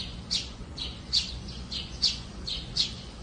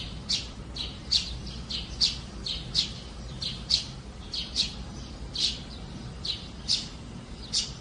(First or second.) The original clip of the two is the second